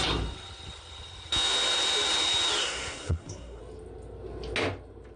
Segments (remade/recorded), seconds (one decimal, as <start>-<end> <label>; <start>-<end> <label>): 0.0-2.6 recorded; 2.6-3.6 remade; 3.6-5.2 recorded